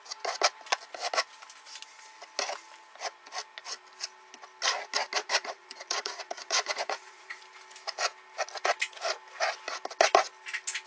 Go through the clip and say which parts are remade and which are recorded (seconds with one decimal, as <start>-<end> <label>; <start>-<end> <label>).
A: 0.0-5.2 recorded; 5.2-7.4 remade; 7.4-10.9 recorded